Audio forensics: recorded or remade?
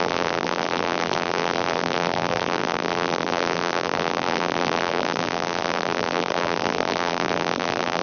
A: remade